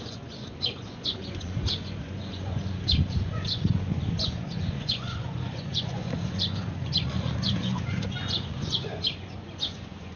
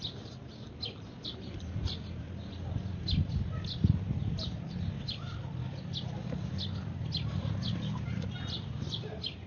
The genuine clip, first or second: second